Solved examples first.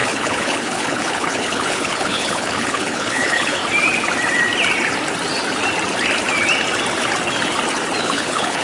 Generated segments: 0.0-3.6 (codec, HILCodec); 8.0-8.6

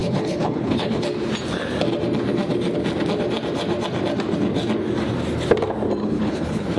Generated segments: 0.0-1.0 (codec, HILCodec); 6.0-6.8